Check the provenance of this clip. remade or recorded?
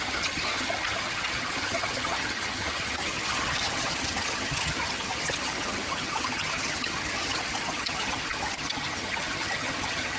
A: remade